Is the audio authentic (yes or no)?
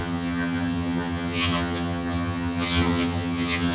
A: no